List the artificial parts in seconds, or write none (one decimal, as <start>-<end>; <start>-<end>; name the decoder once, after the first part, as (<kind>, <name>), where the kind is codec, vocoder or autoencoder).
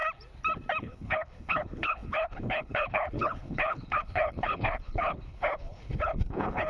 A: 0.8-6.7 (codec, HILCodec)